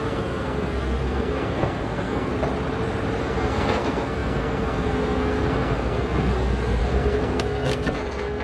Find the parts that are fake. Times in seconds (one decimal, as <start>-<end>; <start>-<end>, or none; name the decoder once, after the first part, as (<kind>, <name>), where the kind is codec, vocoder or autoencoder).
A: 0.0-2.3 (codec, SNAC); 3.2-8.4